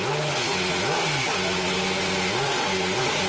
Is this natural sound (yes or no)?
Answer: yes